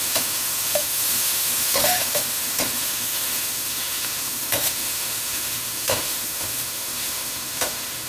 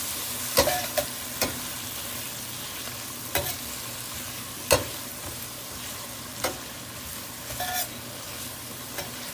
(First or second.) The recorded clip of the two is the second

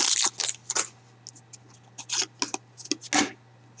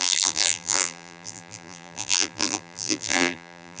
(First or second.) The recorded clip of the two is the first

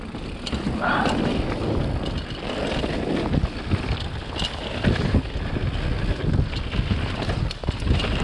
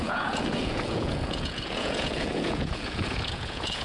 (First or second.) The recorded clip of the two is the first